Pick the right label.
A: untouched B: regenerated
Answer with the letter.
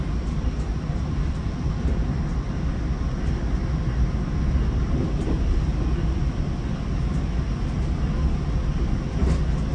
A